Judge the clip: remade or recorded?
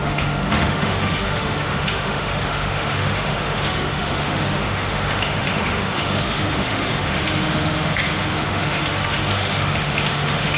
remade